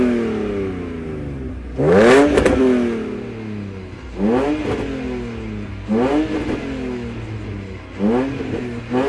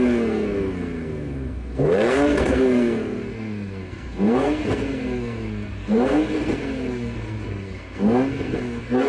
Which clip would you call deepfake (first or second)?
second